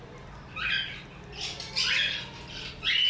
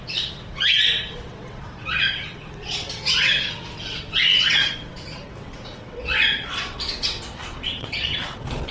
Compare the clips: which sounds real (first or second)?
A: first